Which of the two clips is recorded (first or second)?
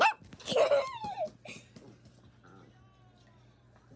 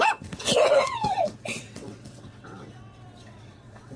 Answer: first